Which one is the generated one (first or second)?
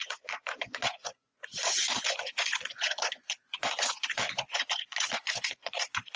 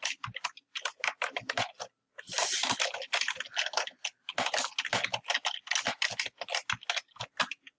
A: first